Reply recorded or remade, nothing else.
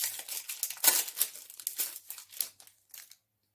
recorded